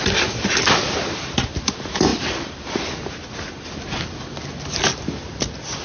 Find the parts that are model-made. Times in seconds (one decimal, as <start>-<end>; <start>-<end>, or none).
none